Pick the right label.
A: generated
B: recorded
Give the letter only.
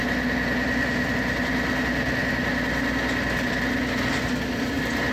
B